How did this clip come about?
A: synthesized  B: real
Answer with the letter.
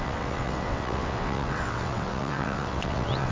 A